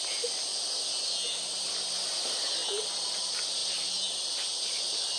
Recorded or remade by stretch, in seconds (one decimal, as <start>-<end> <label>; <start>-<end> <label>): 0.0-5.2 recorded